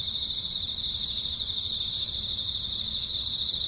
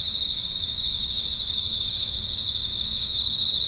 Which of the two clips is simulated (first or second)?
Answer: second